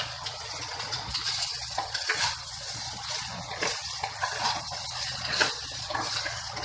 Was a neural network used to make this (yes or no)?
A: yes